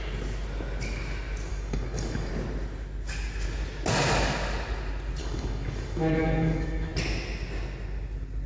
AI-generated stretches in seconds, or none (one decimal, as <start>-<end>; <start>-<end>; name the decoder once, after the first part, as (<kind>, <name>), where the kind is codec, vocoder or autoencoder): 1.5-2.3 (codec, DAC); 5.2-6.9